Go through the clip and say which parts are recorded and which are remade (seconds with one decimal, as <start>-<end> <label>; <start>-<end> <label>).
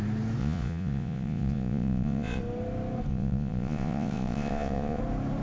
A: 0.0-0.4 recorded; 0.4-2.4 remade; 2.4-3.1 recorded; 3.1-5.0 remade; 5.0-5.4 recorded